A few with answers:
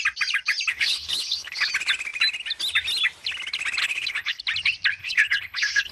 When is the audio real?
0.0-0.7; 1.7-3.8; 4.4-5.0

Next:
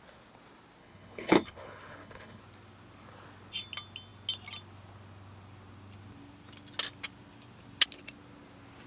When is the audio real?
0.0-0.8; 2.4-8.9

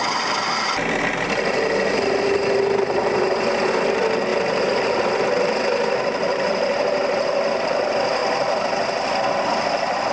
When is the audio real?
0.0-10.1

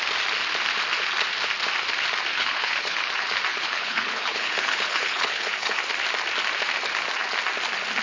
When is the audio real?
0.0-2.3; 3.1-3.5; 5.8-8.0

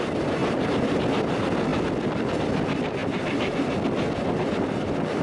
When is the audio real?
0.0-5.2

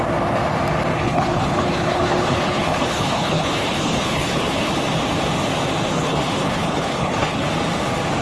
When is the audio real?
0.0-0.9; 4.7-5.9; 7.5-8.2